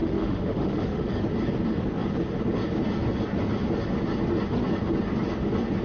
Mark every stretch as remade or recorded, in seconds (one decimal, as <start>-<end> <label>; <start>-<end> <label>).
0.0-1.0 remade; 1.0-5.8 recorded